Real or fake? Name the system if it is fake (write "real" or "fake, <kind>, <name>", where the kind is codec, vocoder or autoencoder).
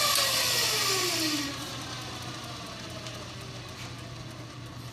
real